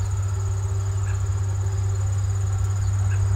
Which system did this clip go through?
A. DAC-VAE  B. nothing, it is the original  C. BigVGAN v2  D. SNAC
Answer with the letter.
B